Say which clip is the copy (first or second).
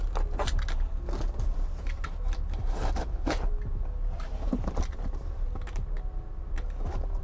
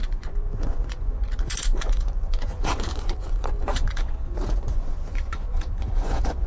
second